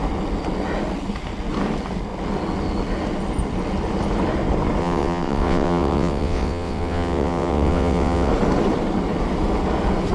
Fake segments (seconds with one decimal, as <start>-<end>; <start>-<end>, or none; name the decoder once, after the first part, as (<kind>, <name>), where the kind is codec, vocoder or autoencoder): 4.8-8.3 (vocoder, WaveNeXt)